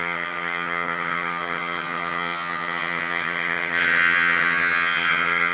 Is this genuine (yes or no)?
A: no